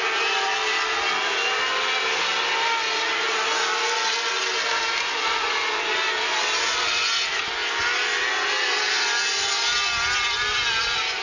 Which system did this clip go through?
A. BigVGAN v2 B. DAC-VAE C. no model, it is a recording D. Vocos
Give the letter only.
C